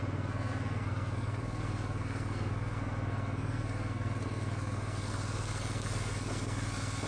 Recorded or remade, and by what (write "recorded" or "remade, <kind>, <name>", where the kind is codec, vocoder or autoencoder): remade, codec, SNAC